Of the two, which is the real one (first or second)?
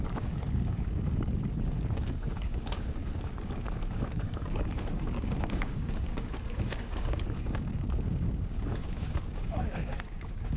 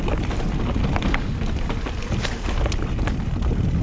second